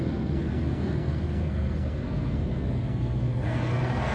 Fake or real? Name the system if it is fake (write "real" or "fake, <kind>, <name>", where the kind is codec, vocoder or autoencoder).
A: fake, codec, SNAC